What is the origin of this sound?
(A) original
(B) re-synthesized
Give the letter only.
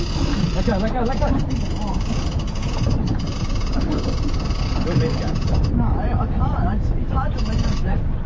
A